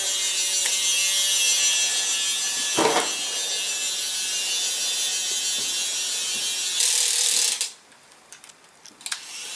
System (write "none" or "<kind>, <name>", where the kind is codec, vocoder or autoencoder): none